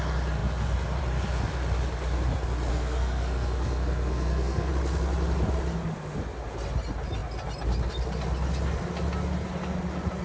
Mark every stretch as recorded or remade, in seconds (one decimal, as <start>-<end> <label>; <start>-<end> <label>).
0.0-2.7 recorded; 2.7-4.7 remade; 4.7-10.2 recorded